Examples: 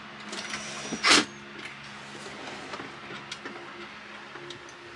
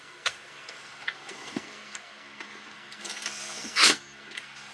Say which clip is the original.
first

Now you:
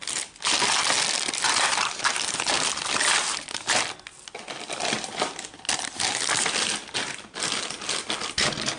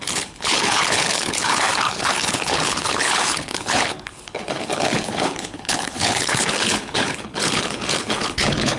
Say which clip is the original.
first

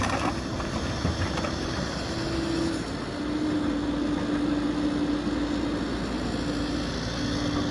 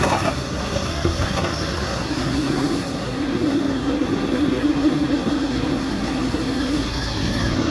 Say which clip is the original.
first